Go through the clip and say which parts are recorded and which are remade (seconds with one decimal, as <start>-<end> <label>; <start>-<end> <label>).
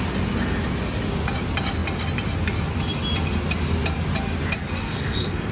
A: 0.0-4.8 recorded; 4.8-5.5 remade